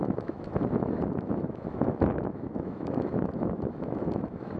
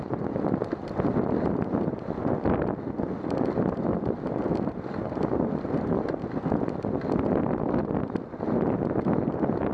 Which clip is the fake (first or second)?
first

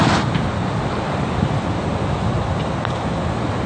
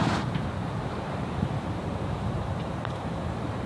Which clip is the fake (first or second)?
second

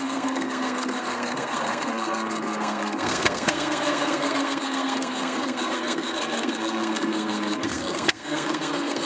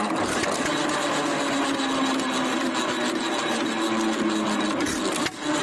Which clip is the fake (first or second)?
first